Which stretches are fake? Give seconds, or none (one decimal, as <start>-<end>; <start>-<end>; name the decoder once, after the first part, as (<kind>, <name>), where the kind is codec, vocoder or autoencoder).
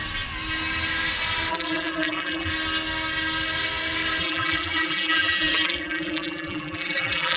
1.5-2.5 (vocoder, BigVGAN v2); 4.2-7.4